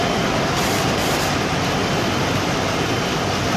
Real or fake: real